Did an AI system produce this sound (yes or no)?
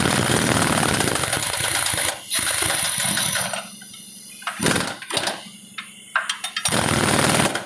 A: no